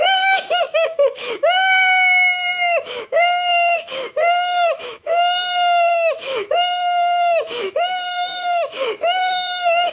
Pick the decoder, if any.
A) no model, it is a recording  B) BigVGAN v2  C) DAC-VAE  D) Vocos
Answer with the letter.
C